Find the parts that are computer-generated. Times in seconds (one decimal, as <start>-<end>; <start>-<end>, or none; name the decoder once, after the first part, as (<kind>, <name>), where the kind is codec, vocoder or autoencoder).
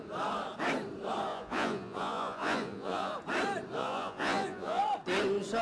1.3-3.1 (vocoder, Vocos); 3.8-4.8